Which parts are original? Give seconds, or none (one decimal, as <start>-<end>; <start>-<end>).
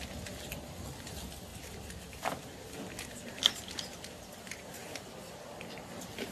0.0-6.3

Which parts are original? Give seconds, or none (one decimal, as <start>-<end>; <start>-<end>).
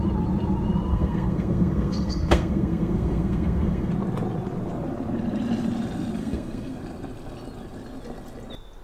0.0-0.9; 3.9-6.2; 6.8-8.8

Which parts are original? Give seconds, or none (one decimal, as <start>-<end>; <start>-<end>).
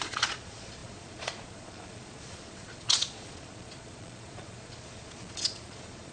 none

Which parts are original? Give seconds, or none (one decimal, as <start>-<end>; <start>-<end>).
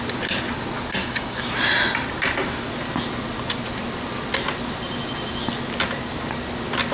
0.0-1.0; 1.5-6.9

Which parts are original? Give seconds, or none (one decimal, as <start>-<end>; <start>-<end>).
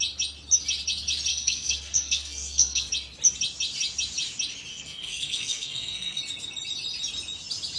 0.0-1.3; 2.9-4.7; 6.2-7.8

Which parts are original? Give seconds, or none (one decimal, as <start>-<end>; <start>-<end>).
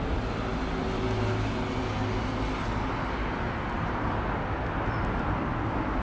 0.0-6.0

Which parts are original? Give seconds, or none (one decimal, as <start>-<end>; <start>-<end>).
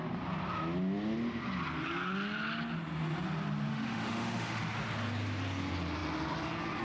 0.0-3.7; 4.6-6.8